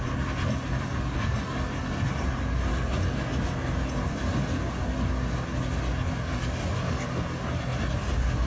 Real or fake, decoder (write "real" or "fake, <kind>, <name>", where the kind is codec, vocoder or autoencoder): real